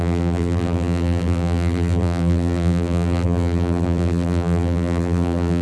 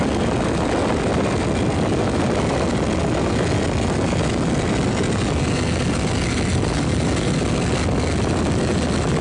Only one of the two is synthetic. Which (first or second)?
first